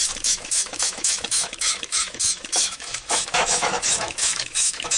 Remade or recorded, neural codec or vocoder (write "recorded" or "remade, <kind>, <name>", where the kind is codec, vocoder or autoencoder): remade, autoencoder, DAC-VAE